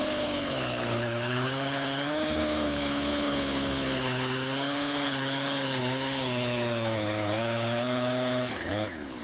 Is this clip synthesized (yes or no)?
yes